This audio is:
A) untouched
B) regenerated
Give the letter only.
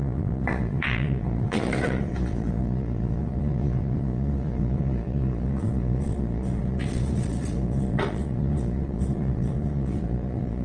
B